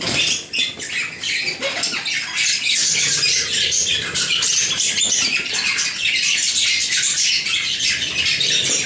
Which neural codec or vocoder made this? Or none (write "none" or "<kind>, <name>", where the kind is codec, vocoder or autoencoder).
none